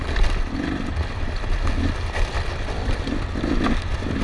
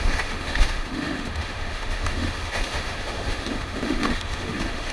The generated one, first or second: second